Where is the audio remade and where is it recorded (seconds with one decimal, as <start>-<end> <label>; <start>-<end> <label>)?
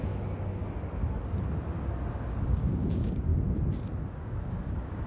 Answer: 0.0-0.6 remade; 0.6-2.4 recorded; 2.4-3.3 remade; 3.3-4.1 recorded; 4.1-5.1 remade